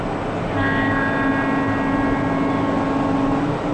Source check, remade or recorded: recorded